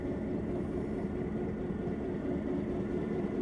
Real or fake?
fake